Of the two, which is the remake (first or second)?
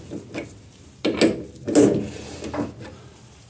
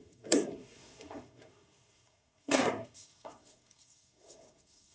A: second